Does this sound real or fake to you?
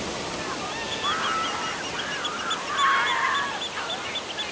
real